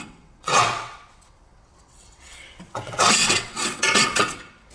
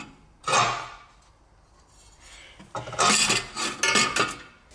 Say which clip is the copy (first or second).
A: first